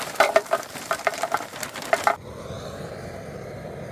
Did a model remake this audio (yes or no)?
yes